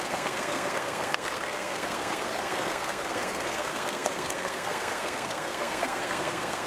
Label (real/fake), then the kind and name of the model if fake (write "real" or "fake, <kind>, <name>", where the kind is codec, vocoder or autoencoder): fake, codec, SNAC